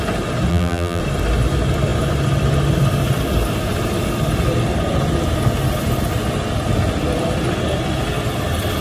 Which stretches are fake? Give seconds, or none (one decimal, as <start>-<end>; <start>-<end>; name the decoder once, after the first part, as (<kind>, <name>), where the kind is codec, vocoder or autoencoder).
0.5-1.0 (vocoder, BigVGAN v2)